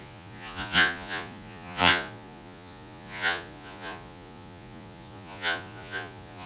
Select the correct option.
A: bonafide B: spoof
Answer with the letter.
B